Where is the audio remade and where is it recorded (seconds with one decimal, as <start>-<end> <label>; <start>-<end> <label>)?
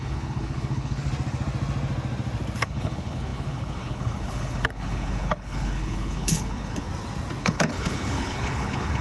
0.0-1.0 remade; 1.0-2.6 recorded; 2.6-6.9 remade; 6.9-7.4 recorded; 7.4-9.0 remade